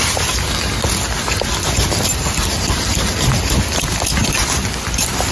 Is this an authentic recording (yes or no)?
yes